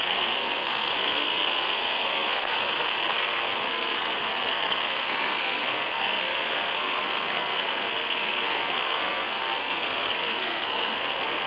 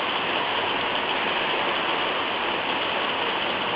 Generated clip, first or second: first